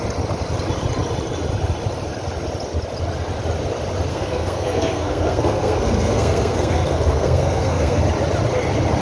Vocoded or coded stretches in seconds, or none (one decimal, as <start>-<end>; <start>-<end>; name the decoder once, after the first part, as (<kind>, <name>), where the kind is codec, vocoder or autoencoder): 4.1-8.0 (codec, SNAC)